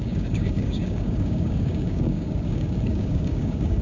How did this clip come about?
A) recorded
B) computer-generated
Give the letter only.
B